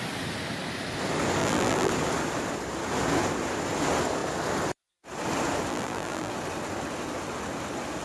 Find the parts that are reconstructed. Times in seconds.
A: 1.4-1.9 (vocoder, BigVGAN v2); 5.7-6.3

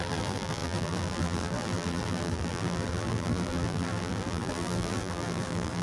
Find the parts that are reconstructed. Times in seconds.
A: 0.0-5.8 (vocoder, BigVGAN v2)

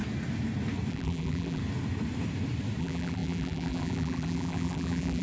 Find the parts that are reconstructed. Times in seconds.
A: 0.9-1.6 (vocoder, BigVGAN v2); 2.8-5.2